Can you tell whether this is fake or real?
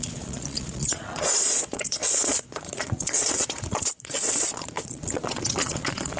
fake